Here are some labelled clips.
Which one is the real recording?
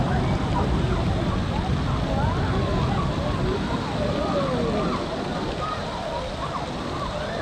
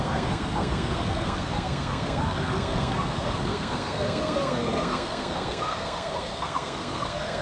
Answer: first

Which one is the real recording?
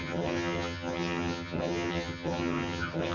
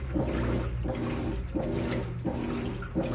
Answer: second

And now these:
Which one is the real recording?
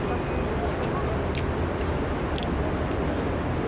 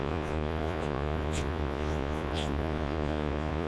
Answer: first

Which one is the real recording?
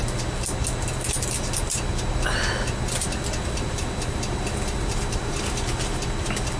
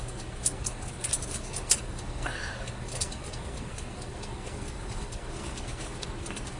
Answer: first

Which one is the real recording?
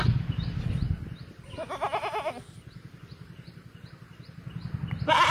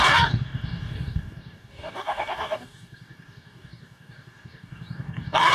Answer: first